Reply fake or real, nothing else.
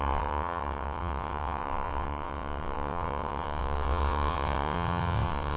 fake